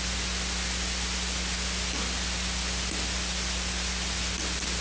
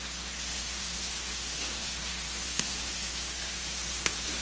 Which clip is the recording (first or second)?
first